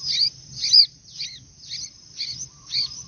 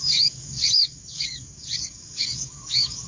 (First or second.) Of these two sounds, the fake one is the second